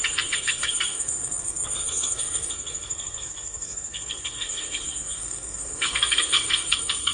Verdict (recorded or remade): remade